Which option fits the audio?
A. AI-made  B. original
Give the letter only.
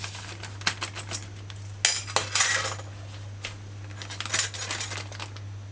B